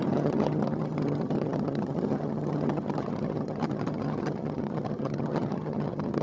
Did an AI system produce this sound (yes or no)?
yes